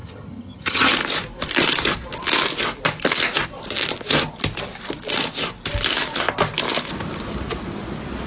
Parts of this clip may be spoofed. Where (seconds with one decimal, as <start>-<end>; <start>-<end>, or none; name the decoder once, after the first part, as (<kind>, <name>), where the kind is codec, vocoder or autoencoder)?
0.0-0.9 (vocoder, HiFi-GAN)